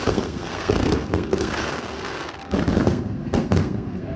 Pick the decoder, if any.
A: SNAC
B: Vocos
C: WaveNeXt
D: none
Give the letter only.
A